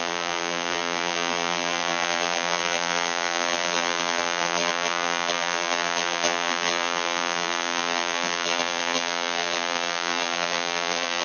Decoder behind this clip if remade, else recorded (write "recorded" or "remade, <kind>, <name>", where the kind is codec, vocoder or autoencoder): remade, vocoder, BigVGAN v2